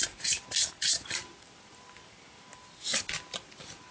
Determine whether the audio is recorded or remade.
recorded